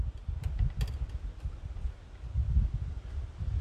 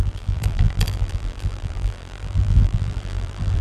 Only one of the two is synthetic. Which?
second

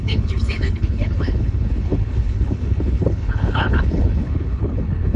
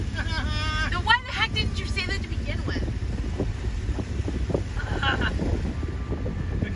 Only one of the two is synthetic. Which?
first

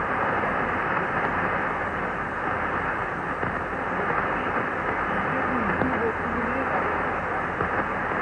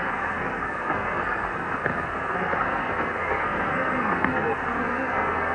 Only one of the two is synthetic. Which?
second